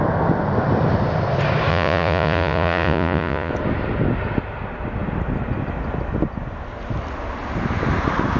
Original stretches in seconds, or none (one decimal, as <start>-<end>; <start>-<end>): 0.0-1.7; 3.5-8.4